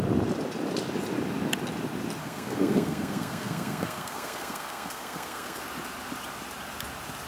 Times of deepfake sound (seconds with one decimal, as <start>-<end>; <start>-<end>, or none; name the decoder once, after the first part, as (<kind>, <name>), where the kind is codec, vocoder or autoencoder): 2.2-5.6 (codec, SNAC)

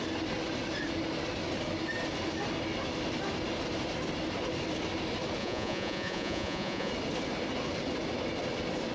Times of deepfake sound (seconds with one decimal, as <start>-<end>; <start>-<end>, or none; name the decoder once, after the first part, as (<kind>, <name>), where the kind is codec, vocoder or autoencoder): 5.4-6.9 (vocoder, Vocos)

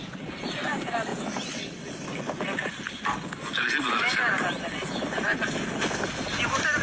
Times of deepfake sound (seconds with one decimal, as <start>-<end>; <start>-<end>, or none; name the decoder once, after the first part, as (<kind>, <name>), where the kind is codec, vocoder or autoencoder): none

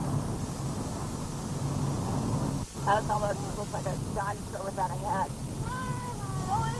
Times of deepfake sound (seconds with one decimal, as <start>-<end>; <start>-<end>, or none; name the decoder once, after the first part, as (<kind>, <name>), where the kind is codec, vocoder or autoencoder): none

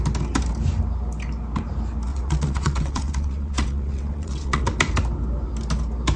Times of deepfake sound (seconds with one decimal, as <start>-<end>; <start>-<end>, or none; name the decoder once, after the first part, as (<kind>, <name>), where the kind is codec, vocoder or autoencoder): 2.1-4.6 (vocoder, WaveNeXt)

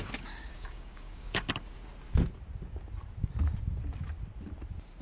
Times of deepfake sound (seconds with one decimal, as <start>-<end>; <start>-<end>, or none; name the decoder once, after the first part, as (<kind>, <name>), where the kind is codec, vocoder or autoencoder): 0.5-1.5 (codec, DAC)

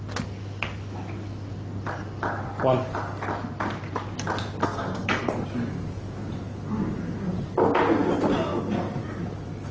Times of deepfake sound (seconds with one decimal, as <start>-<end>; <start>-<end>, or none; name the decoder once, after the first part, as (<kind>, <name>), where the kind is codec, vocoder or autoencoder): 4.6-5.3 (codec, SNAC)